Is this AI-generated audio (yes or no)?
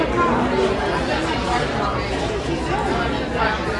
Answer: no